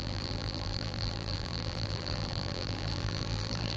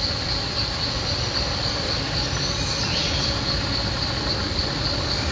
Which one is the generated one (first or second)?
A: first